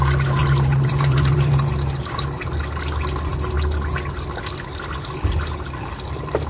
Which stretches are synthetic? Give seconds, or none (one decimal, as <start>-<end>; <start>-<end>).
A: 0.4-1.7